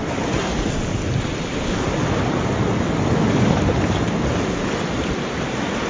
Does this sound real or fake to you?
real